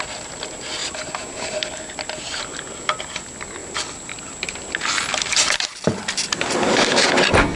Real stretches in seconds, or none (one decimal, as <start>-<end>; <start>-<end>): 0.0-7.6